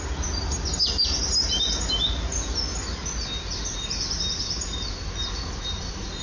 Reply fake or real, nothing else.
real